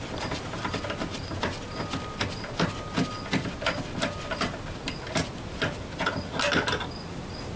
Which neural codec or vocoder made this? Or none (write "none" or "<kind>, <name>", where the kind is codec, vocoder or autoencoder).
none